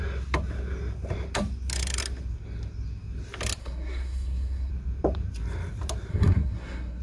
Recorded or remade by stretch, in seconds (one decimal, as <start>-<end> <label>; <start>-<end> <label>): 0.0-3.6 recorded; 3.6-4.7 remade; 4.7-6.1 recorded; 6.1-7.0 remade